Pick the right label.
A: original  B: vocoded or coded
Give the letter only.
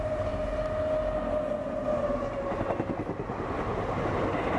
A